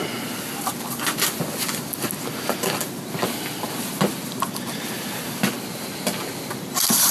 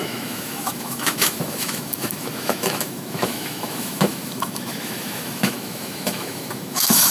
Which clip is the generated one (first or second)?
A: second